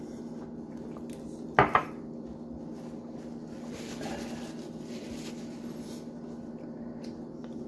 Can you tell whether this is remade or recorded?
recorded